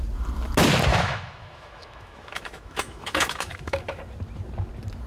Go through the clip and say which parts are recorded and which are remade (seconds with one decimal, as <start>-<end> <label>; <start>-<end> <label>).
0.0-0.9 recorded; 0.9-4.0 remade; 4.0-5.1 recorded